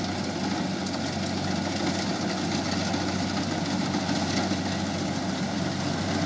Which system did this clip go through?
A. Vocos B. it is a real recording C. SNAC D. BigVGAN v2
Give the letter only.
B